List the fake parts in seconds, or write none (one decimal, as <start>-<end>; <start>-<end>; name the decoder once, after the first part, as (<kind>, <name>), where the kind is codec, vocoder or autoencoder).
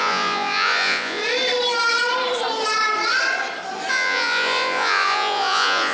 0.0-1.2 (vocoder, Vocos); 3.9-5.9